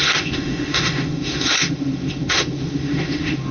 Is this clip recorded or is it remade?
remade